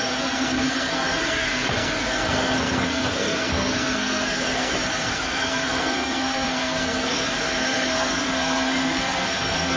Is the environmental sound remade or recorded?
remade